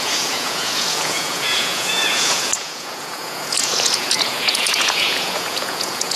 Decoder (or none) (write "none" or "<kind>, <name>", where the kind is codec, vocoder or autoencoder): vocoder, Vocos